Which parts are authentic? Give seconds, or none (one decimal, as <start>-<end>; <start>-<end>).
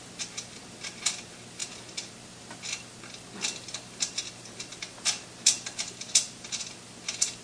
0.0-7.4